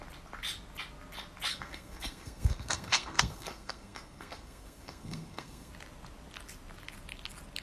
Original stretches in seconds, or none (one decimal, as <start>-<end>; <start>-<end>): 0.0-1.5; 5.7-7.6